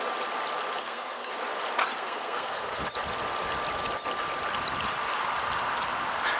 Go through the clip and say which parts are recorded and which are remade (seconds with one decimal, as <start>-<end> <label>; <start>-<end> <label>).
0.0-0.8 recorded; 0.8-1.3 remade; 1.3-1.8 recorded; 1.8-2.8 remade; 2.8-6.4 recorded